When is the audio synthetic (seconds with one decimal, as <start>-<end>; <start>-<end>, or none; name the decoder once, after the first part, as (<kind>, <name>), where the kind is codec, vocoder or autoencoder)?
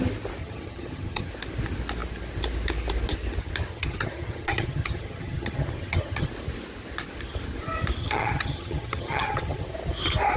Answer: 0.4-1.3 (vocoder, HiFi-GAN); 3.7-6.3; 8.0-9.7